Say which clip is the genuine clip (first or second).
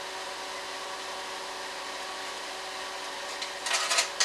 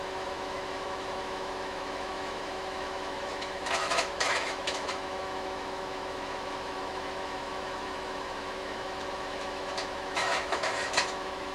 first